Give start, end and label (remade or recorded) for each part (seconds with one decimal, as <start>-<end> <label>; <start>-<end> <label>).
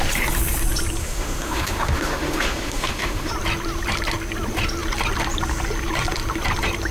0.0-1.0 recorded; 1.0-3.3 remade; 3.3-6.9 recorded